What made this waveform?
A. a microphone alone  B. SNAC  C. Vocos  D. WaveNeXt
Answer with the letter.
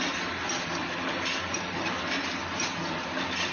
A